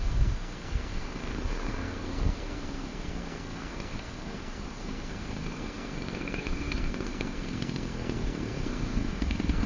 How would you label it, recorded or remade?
remade